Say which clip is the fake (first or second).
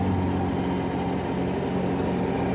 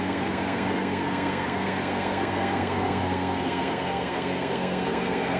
second